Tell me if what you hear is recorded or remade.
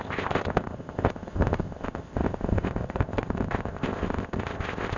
remade